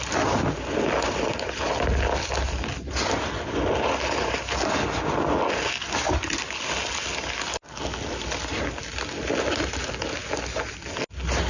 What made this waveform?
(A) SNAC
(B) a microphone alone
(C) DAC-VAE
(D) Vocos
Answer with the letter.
B